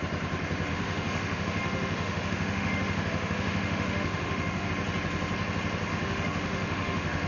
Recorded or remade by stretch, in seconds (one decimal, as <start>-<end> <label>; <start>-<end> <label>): 0.0-0.7 recorded; 0.7-4.7 remade; 4.7-5.9 recorded; 5.9-7.3 remade